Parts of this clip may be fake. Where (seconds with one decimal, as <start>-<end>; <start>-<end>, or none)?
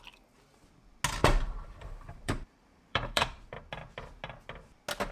1.2-3.6